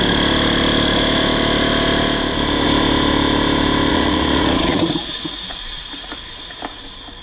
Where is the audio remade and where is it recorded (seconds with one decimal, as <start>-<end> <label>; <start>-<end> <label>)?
0.0-3.9 recorded; 3.9-6.6 remade; 6.6-7.2 recorded